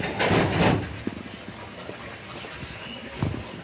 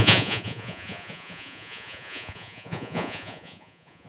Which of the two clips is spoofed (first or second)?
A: second